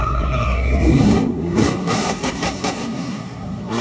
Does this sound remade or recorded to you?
remade